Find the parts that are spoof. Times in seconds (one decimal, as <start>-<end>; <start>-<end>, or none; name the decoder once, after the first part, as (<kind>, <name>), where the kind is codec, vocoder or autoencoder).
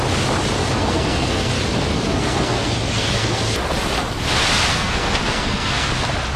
0.6-1.5 (codec, SNAC); 1.9-3.4; 4.7-5.9